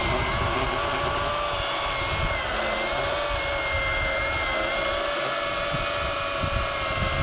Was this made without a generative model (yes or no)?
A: yes